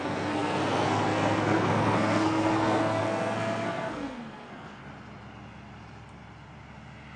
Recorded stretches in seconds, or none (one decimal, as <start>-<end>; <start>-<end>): 4.8-7.2